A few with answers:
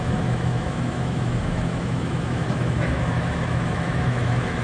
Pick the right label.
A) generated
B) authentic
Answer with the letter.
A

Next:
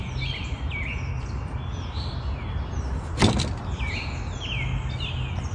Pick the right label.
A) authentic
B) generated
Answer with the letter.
A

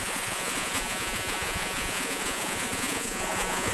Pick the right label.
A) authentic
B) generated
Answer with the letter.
B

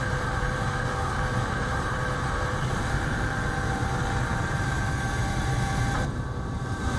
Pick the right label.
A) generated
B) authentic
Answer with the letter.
A